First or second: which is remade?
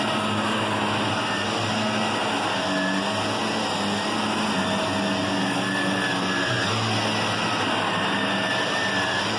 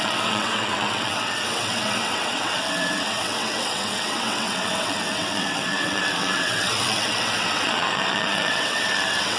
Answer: second